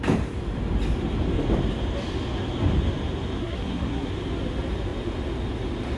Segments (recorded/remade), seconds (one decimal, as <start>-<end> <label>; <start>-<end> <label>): 0.0-3.4 recorded; 3.4-4.1 remade; 4.1-6.0 recorded

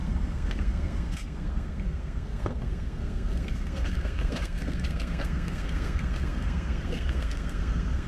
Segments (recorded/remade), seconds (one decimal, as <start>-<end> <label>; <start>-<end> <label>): 0.0-8.1 remade

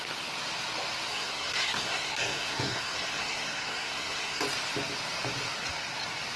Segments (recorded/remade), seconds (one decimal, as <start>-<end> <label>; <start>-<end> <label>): 0.0-1.1 recorded; 1.1-4.4 remade; 4.4-6.4 recorded

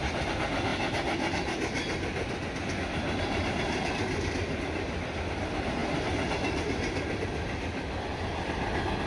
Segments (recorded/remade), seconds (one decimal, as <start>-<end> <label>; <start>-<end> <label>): 0.0-9.1 recorded

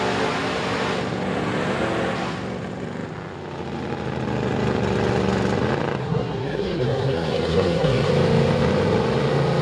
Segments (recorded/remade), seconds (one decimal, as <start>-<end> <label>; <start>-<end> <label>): 0.0-6.0 recorded; 6.0-8.1 remade; 8.1-9.6 recorded